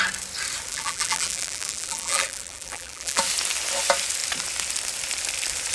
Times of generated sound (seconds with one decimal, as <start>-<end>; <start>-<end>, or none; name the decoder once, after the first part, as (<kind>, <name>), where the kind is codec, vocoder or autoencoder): 0.7-3.2 (vocoder, BigVGAN v2)